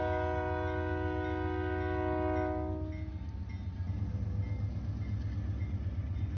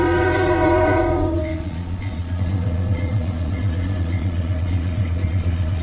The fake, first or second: second